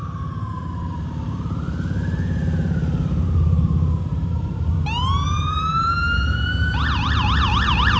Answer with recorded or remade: remade